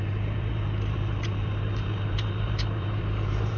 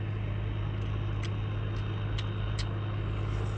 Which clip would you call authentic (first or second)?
second